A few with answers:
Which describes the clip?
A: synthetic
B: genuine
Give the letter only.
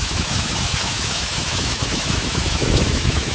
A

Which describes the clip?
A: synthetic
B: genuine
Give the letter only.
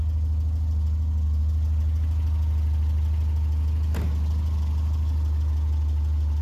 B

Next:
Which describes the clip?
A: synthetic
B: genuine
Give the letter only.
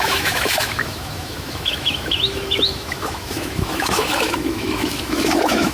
A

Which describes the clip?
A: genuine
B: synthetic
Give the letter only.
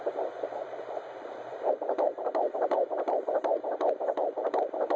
B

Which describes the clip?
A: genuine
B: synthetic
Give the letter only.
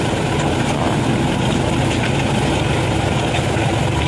A